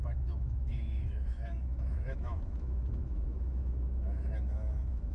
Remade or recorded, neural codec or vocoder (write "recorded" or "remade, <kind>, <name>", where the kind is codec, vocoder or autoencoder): remade, autoencoder, DAC-VAE